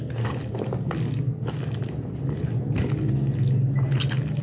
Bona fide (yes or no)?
yes